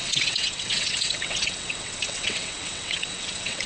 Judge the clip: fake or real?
fake